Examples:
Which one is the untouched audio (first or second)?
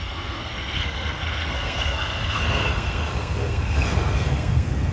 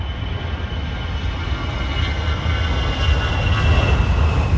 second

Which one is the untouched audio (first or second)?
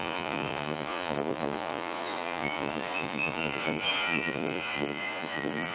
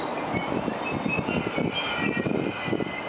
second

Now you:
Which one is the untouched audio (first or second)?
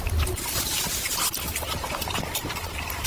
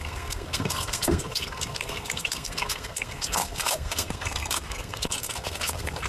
first